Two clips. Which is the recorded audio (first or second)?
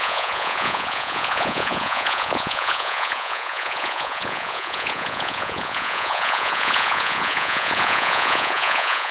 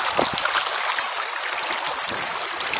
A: second